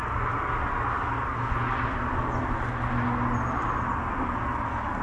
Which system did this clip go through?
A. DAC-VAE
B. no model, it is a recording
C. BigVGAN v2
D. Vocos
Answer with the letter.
B